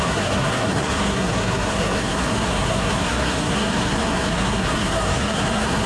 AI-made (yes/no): yes